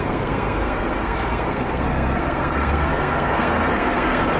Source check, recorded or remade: remade